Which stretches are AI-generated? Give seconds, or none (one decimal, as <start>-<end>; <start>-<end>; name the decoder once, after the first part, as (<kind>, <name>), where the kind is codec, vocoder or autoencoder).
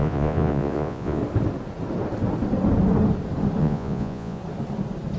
0.0-1.2 (vocoder, Vocos); 3.6-4.4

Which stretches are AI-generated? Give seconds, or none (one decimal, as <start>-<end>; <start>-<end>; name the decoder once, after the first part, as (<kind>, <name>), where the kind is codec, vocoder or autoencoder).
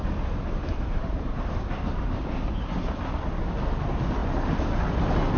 0.7-2.3 (vocoder, BigVGAN v2)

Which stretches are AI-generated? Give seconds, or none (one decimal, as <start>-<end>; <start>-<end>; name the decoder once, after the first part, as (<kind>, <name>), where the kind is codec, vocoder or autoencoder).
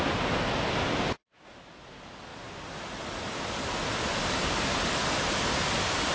none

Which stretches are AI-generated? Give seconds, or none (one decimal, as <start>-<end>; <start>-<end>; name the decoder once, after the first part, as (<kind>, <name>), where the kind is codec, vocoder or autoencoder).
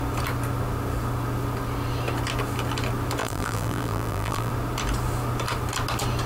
3.2-4.5 (vocoder, BigVGAN v2)